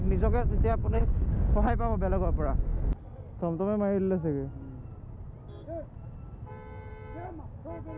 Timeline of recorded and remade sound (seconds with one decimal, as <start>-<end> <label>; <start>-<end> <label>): 0.0-0.8 recorded; 0.8-1.3 remade; 1.3-8.0 recorded